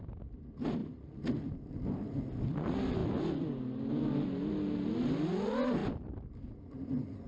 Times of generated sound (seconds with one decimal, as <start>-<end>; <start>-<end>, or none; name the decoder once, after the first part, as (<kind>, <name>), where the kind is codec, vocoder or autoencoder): 0.8-2.2 (vocoder, BigVGAN v2); 3.0-3.9; 5.8-6.7